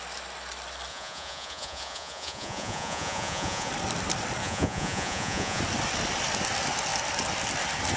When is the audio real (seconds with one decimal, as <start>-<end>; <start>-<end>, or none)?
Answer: 0.0-0.9; 3.7-4.4; 5.6-8.0